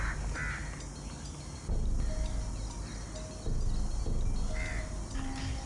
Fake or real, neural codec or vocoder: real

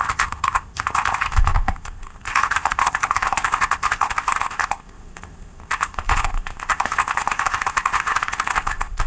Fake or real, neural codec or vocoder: fake, codec, ZipCodec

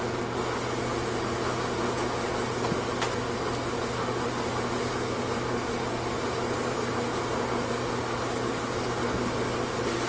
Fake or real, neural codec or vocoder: real